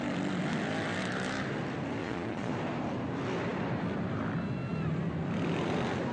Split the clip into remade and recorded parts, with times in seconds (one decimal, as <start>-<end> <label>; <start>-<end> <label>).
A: 0.0-2.0 recorded; 2.0-2.5 remade; 2.5-6.1 recorded